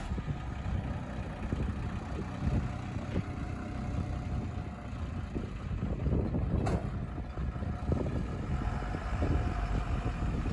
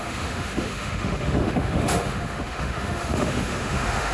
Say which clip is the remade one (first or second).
second